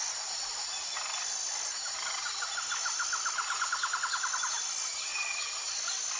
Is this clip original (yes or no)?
yes